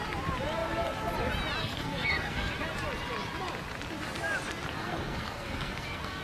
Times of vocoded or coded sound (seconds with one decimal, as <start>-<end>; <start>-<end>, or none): 1.6-2.5; 4.8-6.2